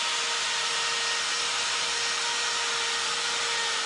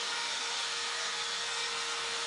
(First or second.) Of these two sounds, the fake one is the second